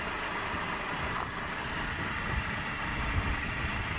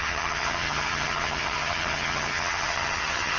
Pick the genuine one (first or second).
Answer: first